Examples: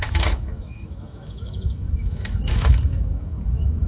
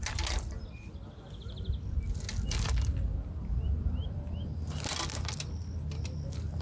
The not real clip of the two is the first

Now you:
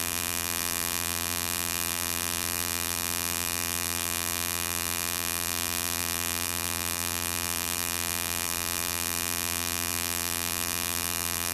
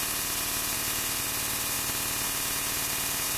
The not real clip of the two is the first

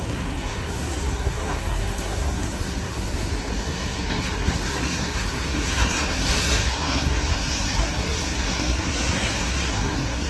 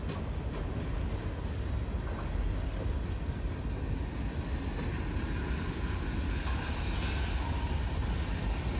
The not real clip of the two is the first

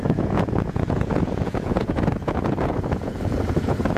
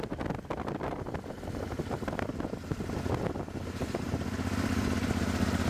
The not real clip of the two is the first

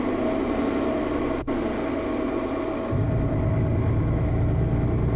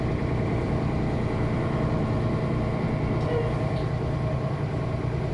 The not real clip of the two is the second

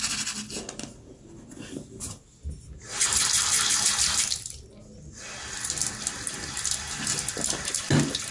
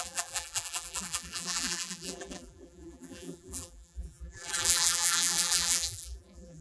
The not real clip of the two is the second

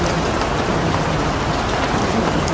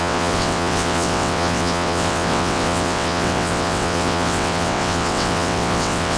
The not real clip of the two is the second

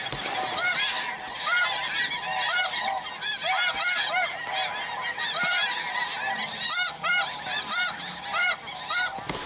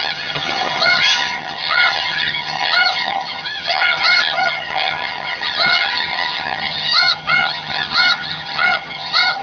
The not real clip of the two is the second